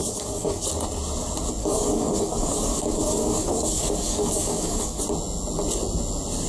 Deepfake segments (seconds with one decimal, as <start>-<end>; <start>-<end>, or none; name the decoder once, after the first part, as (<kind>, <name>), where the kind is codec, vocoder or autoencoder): 0.0-0.7 (codec, DAC); 1.6-5.0